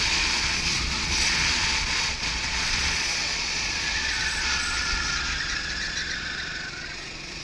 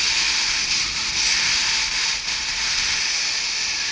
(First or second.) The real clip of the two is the second